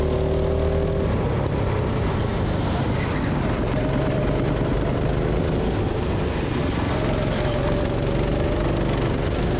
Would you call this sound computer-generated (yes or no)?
no